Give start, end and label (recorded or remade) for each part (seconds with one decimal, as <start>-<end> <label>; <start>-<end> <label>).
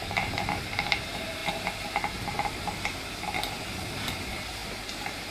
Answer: 0.0-1.4 remade; 1.4-4.1 recorded; 4.1-5.3 remade